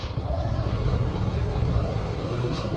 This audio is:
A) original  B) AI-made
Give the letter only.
B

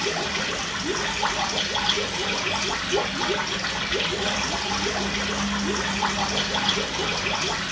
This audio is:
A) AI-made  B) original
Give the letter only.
B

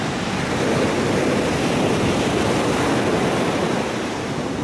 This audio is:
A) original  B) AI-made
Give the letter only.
A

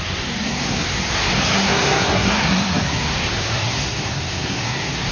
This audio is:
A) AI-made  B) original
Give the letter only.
A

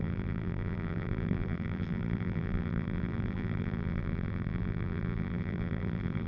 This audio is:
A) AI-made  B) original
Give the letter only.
A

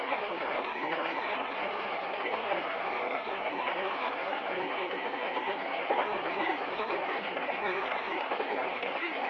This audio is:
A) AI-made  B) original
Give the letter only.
A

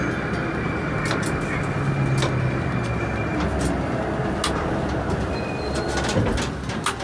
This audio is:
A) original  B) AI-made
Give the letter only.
A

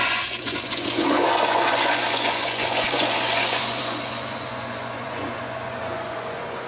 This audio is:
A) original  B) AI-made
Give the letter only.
B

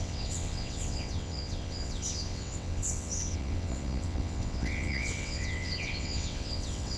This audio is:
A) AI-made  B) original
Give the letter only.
A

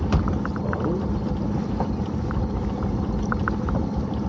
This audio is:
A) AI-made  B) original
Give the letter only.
B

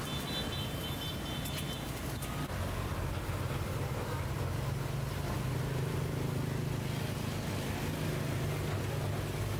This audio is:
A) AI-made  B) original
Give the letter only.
B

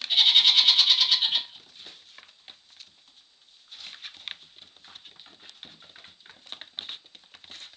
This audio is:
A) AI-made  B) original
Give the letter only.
B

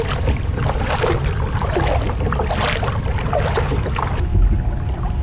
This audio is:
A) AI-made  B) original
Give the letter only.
B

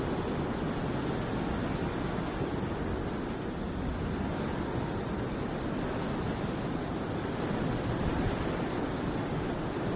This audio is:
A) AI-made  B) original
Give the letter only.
B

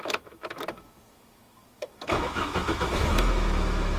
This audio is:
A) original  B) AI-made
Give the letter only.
B